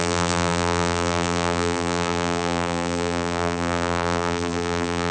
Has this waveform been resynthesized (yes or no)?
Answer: yes